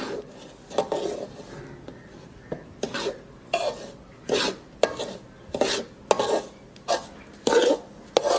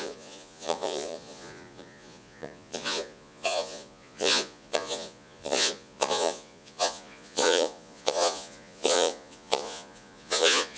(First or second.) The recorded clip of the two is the first